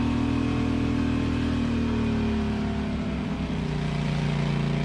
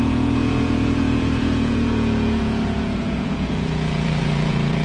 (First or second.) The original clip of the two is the first